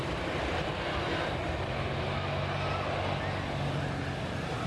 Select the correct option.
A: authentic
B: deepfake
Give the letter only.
A